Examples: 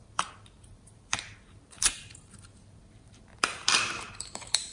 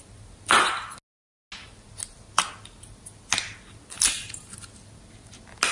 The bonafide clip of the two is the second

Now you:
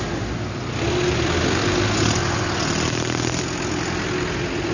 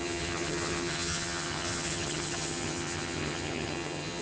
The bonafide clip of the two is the first